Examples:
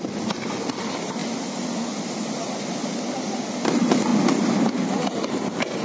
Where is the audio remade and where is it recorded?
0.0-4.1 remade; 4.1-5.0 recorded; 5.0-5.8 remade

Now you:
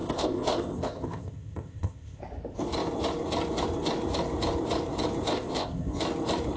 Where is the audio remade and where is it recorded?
0.0-2.2 remade; 2.2-5.3 recorded; 5.3-6.0 remade; 6.0-6.6 recorded

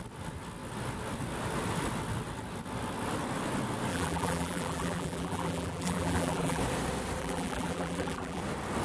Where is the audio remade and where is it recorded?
0.0-3.9 recorded; 3.9-6.6 remade; 6.6-7.2 recorded; 7.2-8.4 remade; 8.4-8.8 recorded

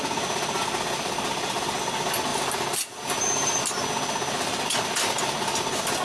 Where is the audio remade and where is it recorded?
0.0-6.0 recorded

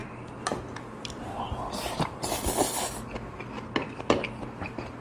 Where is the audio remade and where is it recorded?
0.0-2.5 remade; 2.5-5.0 recorded